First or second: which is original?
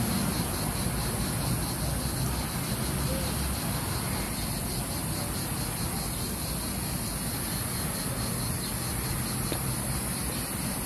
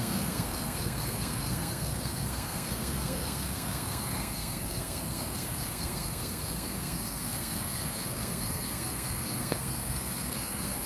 first